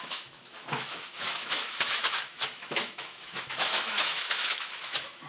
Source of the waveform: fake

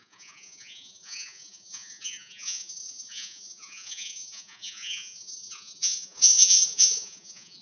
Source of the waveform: fake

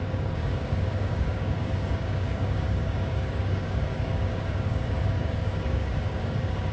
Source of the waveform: fake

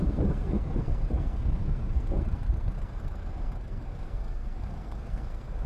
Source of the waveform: fake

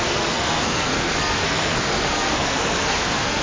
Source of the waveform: fake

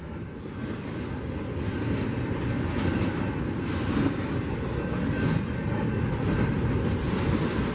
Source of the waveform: real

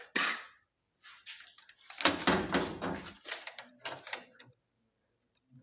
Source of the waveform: real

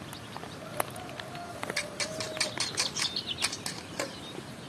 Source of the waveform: real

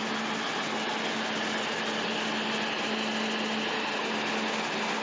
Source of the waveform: real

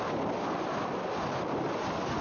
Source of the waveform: real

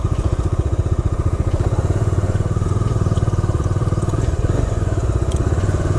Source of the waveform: fake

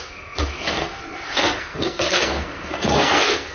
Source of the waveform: fake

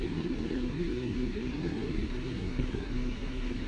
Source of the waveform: fake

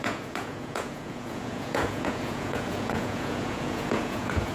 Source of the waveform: fake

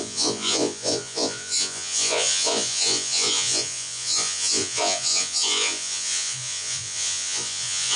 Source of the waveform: fake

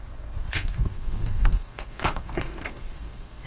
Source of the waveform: fake